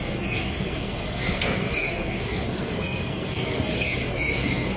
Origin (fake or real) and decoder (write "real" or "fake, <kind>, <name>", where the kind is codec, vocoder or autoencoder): fake, codec, SNAC